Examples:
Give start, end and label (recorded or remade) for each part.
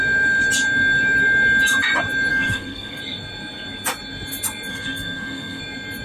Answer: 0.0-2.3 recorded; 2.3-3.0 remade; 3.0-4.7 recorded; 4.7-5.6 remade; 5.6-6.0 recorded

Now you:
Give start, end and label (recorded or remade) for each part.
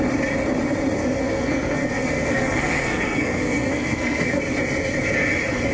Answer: 0.0-1.0 recorded; 1.0-4.4 remade; 4.4-5.7 recorded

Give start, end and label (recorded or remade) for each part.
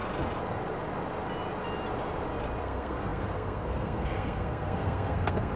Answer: 0.0-2.6 recorded; 2.6-5.6 remade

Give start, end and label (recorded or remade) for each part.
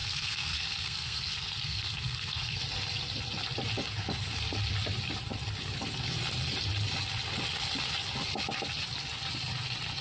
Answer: 0.0-2.6 remade; 2.6-10.0 recorded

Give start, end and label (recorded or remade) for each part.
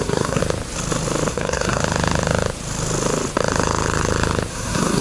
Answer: 0.0-0.4 remade; 0.4-1.3 recorded; 1.3-1.8 remade; 1.8-4.5 recorded; 4.5-5.0 remade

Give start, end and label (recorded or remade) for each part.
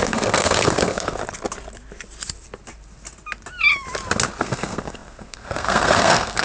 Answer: 0.0-1.2 remade; 1.2-4.4 recorded; 4.4-6.4 remade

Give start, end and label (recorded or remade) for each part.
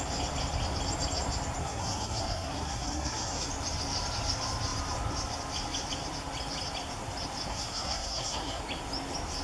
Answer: 0.0-1.6 recorded; 1.6-3.5 remade; 3.5-7.5 recorded; 7.5-8.6 remade; 8.6-9.4 recorded